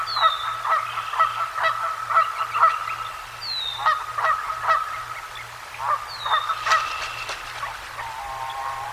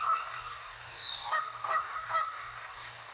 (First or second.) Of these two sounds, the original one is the first